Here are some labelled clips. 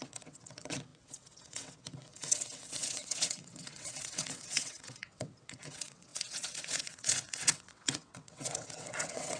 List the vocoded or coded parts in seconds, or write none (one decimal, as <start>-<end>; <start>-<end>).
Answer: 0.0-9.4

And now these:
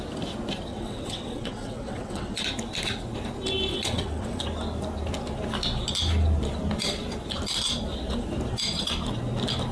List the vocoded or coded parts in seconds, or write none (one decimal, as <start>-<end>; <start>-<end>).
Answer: 0.7-2.4; 3.7-4.4

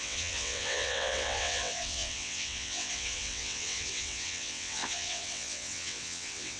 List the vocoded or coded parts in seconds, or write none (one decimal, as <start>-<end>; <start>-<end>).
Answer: 0.0-6.6

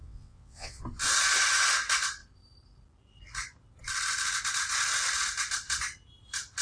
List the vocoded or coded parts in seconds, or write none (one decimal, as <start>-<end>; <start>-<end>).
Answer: 0.0-0.8

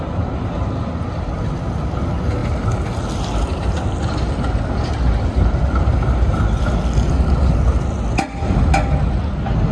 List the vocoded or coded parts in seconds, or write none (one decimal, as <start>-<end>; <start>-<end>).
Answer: none

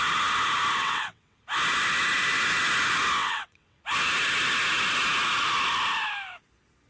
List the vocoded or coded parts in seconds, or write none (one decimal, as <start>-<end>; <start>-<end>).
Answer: 0.8-1.4; 3.2-3.8